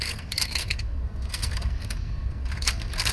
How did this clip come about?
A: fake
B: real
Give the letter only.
A